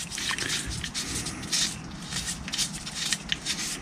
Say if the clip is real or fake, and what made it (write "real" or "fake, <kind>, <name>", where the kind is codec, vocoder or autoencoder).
real